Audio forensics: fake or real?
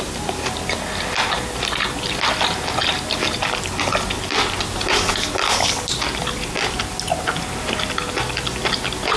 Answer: real